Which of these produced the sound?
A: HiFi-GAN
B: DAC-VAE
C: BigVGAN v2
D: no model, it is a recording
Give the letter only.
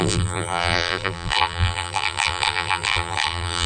C